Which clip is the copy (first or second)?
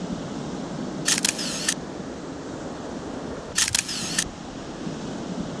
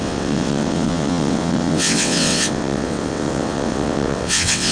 second